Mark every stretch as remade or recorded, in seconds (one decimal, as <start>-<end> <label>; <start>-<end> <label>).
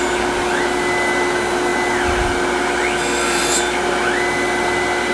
0.0-5.1 recorded